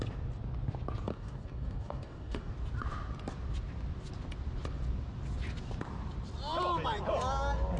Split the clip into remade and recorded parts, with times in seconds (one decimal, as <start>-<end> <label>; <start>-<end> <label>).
0.0-1.1 recorded; 1.1-2.5 remade; 2.5-7.8 recorded